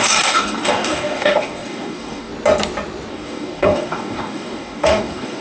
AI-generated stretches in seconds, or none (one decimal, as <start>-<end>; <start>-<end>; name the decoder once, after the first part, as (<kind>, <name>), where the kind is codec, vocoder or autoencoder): 0.0-2.3 (codec, DAC); 3.1-5.4

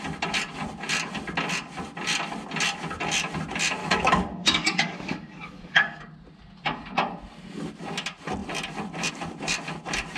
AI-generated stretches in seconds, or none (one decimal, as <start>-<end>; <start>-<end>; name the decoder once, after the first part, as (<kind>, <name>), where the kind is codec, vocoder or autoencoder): 3.8-6.0 (codec, DAC)

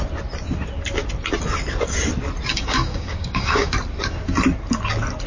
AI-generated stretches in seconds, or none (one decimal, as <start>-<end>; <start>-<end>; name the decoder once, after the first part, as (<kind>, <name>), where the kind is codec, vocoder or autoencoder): 2.5-3.7 (codec, DAC)

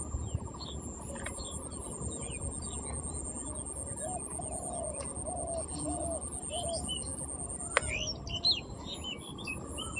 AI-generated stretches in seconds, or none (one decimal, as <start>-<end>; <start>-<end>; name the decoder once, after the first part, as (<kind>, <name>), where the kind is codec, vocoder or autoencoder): none

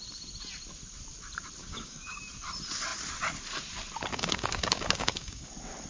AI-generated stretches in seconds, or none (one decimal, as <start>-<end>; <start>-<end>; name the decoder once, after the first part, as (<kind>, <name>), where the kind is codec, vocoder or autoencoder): 1.6-2.2 (codec, DAC); 4.1-5.5

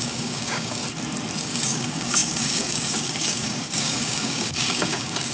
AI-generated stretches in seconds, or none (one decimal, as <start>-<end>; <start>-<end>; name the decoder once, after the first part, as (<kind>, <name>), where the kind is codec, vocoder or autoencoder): 0.0-0.8 (codec, DAC); 1.4-5.3

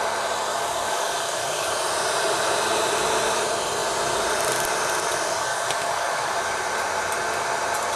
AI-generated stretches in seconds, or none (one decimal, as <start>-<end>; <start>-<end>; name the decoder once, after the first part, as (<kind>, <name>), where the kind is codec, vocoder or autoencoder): 0.5-1.7 (codec, DAC); 5.5-6.3